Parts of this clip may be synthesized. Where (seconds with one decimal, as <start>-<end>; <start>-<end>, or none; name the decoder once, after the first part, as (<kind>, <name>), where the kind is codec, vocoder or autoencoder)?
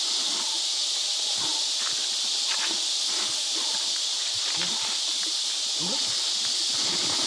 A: none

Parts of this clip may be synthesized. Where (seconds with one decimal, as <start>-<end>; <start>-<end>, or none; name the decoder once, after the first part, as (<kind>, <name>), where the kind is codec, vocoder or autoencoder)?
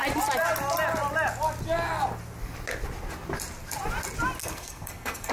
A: 4.4-5.3 (codec, SNAC)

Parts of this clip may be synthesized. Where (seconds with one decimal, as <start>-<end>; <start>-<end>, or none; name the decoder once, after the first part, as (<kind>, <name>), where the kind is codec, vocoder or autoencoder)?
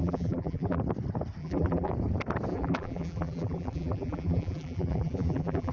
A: 0.0-0.8 (vocoder, BigVGAN v2); 1.4-1.9; 2.5-5.7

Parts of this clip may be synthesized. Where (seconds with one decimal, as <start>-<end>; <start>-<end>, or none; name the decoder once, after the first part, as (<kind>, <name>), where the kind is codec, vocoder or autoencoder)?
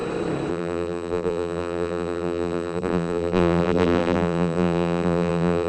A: 0.5-5.7 (vocoder, BigVGAN v2)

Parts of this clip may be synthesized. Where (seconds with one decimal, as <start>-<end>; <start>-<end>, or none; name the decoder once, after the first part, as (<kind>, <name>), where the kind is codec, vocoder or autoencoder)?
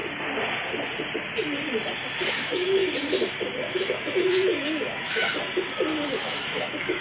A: 2.3-2.8 (autoencoder, DAC-VAE); 3.7-5.2; 6.2-7.0